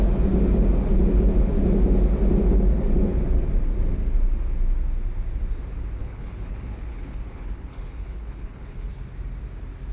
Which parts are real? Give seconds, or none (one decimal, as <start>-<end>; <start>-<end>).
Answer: 0.0-6.0; 8.9-9.9